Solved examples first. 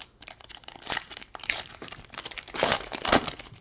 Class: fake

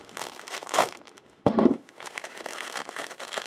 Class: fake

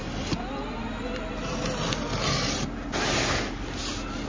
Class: real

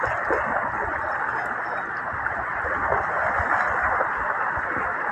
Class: real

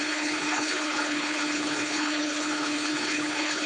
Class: fake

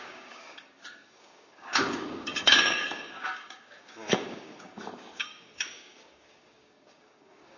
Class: fake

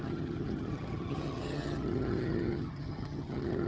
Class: fake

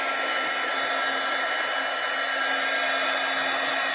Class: real